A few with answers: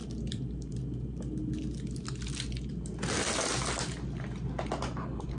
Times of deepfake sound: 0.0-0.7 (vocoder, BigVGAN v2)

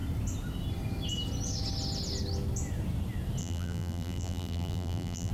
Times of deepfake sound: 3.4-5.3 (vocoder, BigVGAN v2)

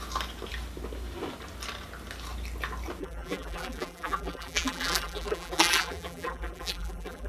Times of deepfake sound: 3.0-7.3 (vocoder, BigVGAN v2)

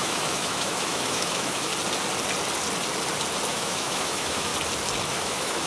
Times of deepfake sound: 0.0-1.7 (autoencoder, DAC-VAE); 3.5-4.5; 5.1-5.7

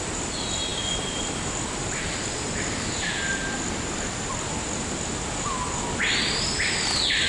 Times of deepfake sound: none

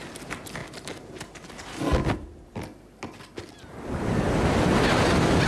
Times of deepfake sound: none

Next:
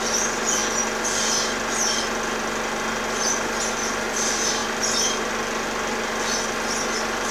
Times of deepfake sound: none

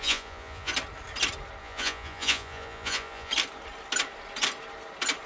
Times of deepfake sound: 0.0-0.7 (vocoder, Vocos); 1.6-3.3